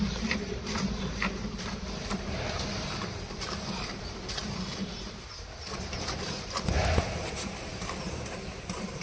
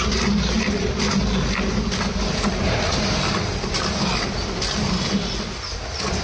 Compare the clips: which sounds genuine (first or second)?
second